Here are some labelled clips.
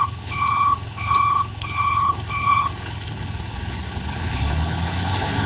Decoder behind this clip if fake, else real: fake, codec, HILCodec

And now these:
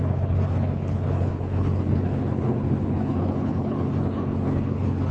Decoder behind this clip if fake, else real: fake, codec, HILCodec